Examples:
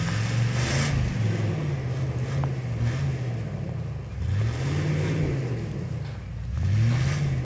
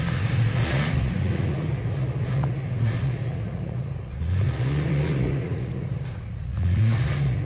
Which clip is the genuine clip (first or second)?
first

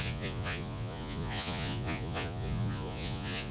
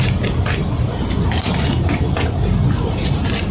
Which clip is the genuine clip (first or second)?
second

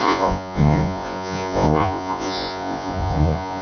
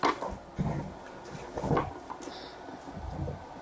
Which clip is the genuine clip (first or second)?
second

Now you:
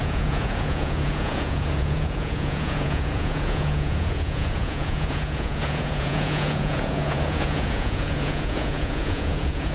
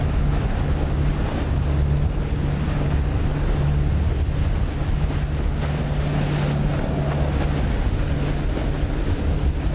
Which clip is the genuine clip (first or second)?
second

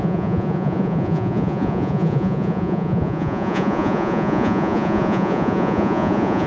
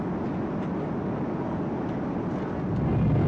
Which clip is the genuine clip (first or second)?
second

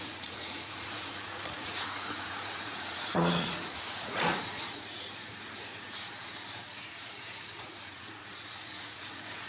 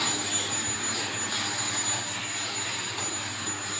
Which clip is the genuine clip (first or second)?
second